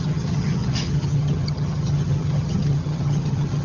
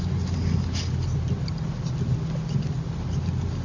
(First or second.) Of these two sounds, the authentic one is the second